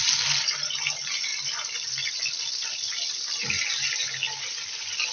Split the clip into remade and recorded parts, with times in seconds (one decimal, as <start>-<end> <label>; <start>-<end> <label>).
0.0-5.1 recorded